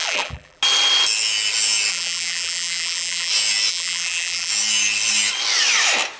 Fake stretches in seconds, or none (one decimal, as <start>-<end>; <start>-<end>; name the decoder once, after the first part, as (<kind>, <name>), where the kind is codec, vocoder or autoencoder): 0.0-0.6 (vocoder, BigVGAN v2); 1.9-3.3; 3.7-4.5